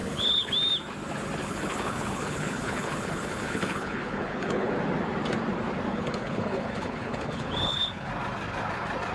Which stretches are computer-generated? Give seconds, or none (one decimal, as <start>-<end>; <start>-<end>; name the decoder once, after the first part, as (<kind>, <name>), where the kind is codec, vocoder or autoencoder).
0.0-0.5 (codec, HILCodec); 1.4-4.7; 5.9-8.1